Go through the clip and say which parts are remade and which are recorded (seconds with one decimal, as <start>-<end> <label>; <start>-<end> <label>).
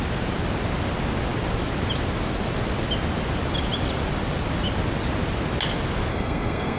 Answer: 0.0-6.1 recorded; 6.1-6.8 remade